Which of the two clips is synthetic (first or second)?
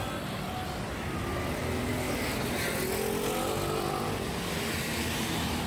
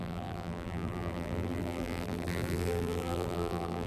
second